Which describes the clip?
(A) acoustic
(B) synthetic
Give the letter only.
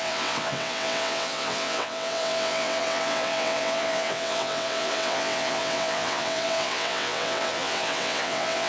B